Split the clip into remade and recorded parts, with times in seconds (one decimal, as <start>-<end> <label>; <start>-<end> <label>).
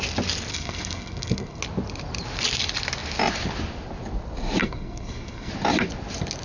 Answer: 0.0-0.5 recorded; 0.5-1.6 remade; 1.6-4.6 recorded; 4.6-5.5 remade; 5.5-6.4 recorded